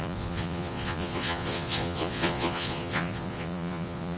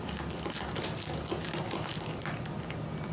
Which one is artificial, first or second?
first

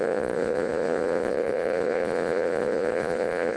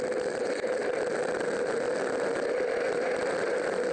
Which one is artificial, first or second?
first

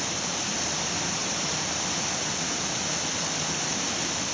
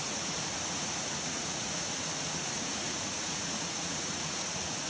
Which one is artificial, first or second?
second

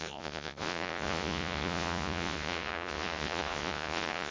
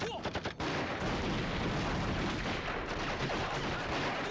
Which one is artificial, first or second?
first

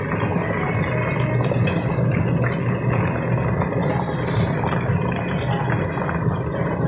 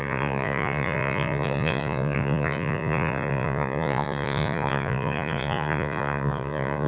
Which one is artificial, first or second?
second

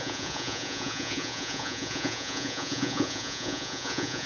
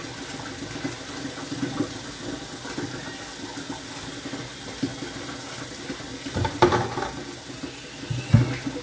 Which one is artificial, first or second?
first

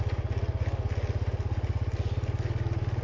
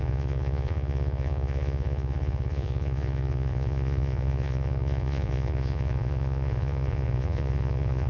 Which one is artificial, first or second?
second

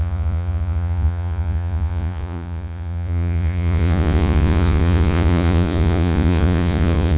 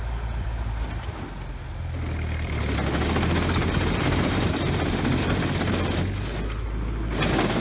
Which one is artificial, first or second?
first